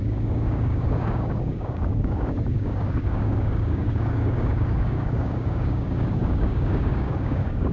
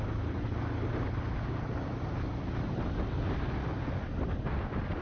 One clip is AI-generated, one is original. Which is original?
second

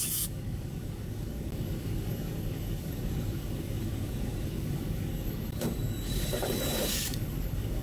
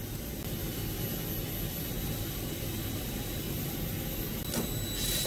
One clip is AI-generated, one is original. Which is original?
second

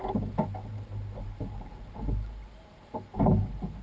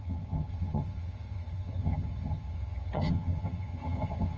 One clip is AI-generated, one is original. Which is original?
first